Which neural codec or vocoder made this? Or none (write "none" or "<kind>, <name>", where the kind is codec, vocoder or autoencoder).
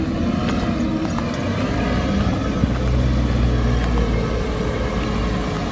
none